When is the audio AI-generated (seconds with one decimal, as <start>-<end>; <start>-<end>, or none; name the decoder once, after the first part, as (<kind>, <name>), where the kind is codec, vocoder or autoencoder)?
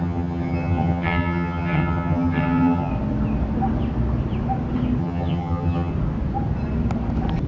0.0-2.9 (vocoder, HiFi-GAN); 5.0-5.9